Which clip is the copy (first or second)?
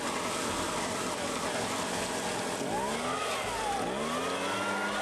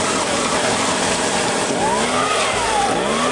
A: second